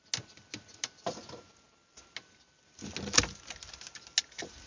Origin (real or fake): real